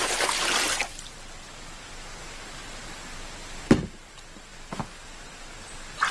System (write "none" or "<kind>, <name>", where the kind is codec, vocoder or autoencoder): none